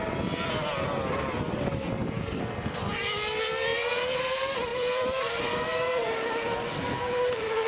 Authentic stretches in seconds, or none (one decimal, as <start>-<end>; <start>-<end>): 0.0-4.7; 5.3-6.0; 6.7-7.7